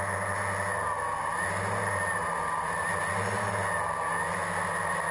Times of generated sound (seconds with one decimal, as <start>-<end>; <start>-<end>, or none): none